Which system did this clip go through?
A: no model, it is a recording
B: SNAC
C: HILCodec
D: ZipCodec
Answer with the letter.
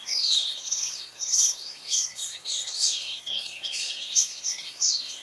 B